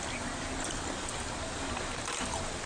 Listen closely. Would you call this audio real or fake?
real